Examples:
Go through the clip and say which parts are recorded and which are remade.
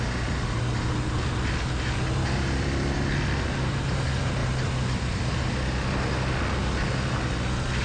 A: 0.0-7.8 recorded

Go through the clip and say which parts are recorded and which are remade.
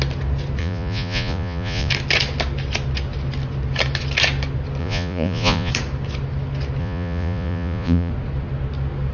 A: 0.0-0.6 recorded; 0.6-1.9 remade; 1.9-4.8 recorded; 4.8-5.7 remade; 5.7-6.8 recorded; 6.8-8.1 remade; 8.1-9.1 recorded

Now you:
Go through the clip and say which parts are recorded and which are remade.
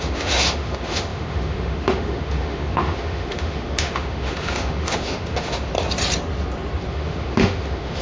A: 0.0-5.7 remade; 5.7-6.9 recorded; 6.9-8.0 remade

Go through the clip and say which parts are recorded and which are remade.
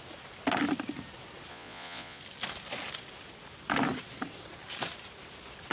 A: 0.0-1.5 recorded; 1.5-2.2 remade; 2.2-5.7 recorded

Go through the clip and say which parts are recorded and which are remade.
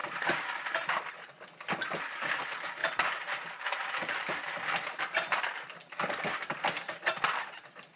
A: 0.0-1.0 remade; 1.0-2.8 recorded; 2.8-5.4 remade; 5.4-8.0 recorded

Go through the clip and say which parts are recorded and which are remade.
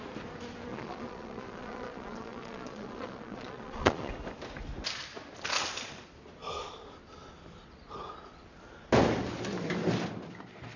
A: 0.0-0.7 recorded; 0.7-4.1 remade; 4.1-10.8 recorded